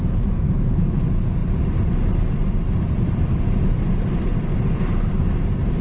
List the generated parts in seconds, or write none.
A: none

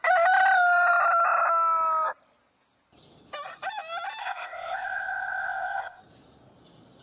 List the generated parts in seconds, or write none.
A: 4.2-6.0 (codec, ZipCodec)